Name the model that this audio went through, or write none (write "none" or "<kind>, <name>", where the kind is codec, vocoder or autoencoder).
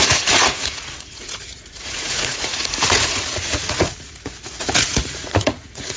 vocoder, Vocos